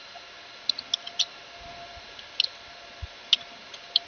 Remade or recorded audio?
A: recorded